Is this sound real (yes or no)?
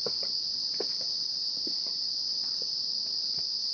yes